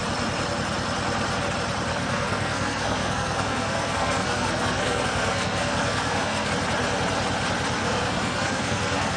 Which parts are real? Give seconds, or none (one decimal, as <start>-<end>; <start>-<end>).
0.0-1.9; 6.5-7.8